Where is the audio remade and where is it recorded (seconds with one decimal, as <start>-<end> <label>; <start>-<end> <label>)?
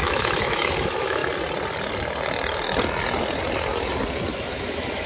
0.0-1.2 remade; 1.2-4.3 recorded; 4.3-5.1 remade